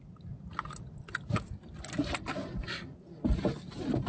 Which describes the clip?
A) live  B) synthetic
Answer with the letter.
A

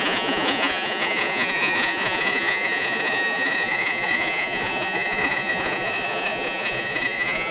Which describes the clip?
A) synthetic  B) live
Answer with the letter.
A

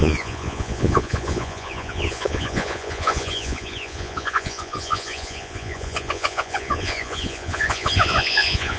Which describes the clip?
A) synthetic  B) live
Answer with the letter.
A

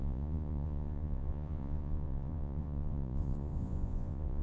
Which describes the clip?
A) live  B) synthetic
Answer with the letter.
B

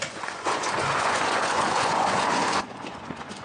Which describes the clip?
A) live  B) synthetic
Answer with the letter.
B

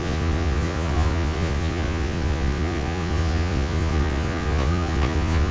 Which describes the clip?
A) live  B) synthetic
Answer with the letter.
B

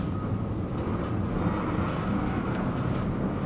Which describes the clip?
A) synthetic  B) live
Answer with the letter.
B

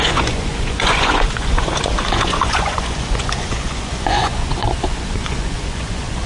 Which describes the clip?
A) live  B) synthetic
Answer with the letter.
B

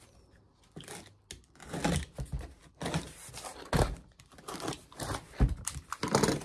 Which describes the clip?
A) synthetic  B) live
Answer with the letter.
B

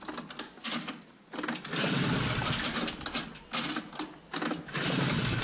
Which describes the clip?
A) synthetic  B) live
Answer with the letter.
B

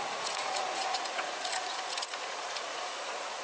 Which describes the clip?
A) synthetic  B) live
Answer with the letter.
A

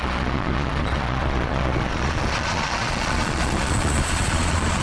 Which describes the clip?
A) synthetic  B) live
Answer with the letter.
A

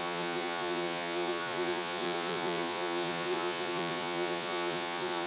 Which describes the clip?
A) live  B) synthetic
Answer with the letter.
B